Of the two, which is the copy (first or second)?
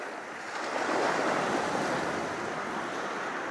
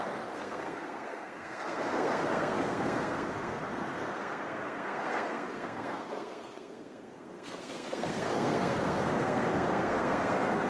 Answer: second